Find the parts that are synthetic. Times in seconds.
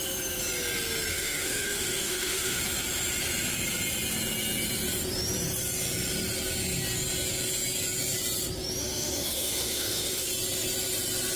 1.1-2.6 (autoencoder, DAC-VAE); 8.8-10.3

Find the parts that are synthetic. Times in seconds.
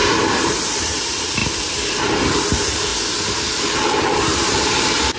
0.5-1.4 (vocoder, BigVGAN v2); 2.4-2.9; 3.5-5.2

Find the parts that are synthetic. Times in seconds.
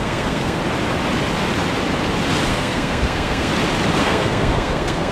0.0-0.6 (codec, SNAC); 2.5-3.5; 4.0-5.1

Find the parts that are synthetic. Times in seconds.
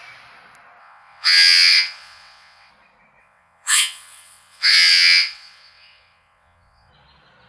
0.8-2.7 (vocoder, WaveNeXt); 3.2-6.9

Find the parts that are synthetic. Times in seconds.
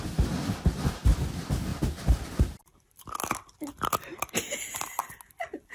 none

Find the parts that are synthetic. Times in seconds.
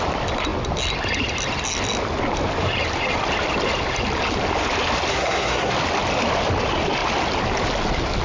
5.1-5.7 (codec, SNAC)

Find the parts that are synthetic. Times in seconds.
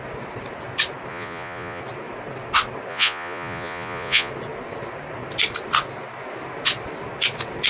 1.1-1.8 (vocoder, Vocos); 2.9-4.3